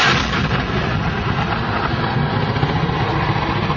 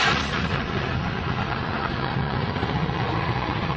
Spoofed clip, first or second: second